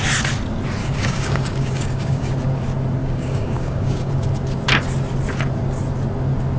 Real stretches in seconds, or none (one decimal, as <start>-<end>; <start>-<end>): 0.0-0.8; 2.3-3.0; 4.1-6.6